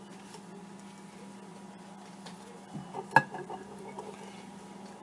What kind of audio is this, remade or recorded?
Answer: recorded